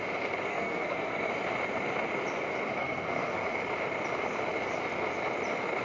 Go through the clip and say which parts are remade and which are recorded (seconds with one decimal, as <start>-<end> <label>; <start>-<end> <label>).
0.0-0.5 recorded; 0.5-1.3 remade; 1.3-2.8 recorded; 2.8-3.4 remade; 3.4-5.8 recorded

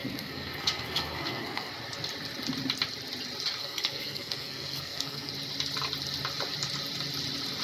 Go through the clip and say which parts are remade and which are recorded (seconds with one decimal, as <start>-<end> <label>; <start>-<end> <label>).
0.0-1.7 remade; 1.7-3.6 recorded; 3.6-5.3 remade; 5.3-7.6 recorded

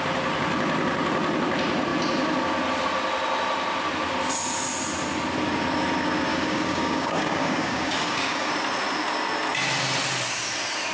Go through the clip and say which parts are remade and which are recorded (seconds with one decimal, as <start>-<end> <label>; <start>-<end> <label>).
0.0-6.3 recorded; 6.3-8.5 remade; 8.5-10.9 recorded

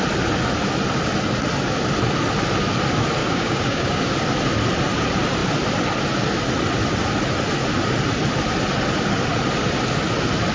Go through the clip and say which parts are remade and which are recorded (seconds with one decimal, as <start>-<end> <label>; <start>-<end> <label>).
0.0-3.2 recorded; 3.2-4.1 remade; 4.1-10.5 recorded